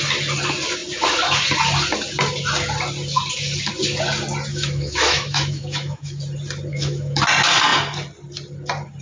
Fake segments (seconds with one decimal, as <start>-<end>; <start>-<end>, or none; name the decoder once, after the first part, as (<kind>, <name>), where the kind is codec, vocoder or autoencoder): 4.5-6.2 (autoencoder, DAC-VAE); 6.7-7.2